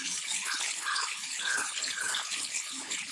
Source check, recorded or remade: remade